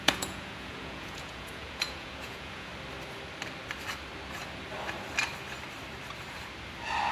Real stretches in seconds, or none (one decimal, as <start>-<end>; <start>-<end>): 2.7-7.1